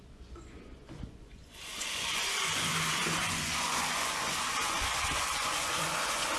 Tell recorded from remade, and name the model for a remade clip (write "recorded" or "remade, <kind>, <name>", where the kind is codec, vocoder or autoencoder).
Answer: remade, vocoder, Vocos